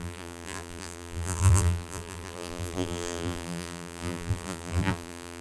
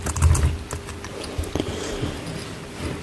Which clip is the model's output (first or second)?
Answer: first